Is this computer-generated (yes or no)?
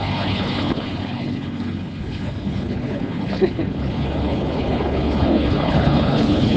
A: yes